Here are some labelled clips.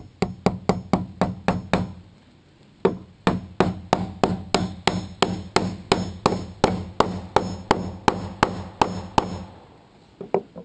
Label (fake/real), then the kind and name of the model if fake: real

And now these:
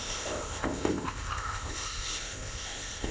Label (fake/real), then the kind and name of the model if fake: fake, codec, ZipCodec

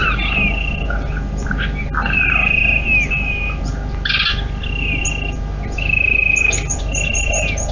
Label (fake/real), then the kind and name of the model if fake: real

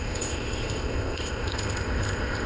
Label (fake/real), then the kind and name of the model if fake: fake, codec, ZipCodec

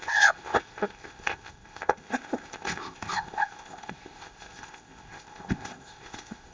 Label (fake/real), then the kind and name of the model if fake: fake, codec, ZipCodec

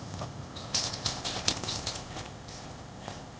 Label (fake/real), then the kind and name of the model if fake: fake, codec, ZipCodec